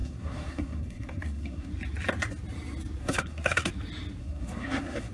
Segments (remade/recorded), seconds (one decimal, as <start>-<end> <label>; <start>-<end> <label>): 0.0-1.7 remade; 1.7-3.0 recorded; 3.0-3.7 remade; 3.7-4.2 recorded; 4.2-5.1 remade